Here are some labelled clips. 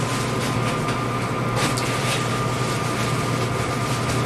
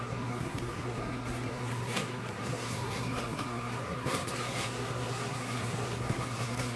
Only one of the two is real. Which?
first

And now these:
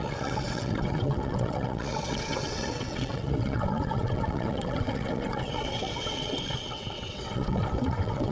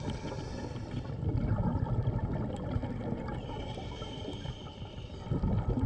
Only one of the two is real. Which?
second